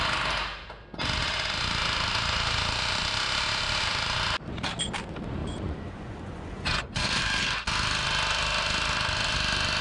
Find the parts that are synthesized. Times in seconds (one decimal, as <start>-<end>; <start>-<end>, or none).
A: 5.4-7.2